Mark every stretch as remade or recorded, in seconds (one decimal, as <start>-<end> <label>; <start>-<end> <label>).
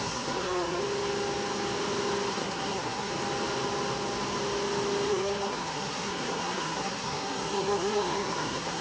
0.0-0.8 remade; 0.8-2.3 recorded; 2.3-3.1 remade; 3.1-5.1 recorded; 5.1-8.8 remade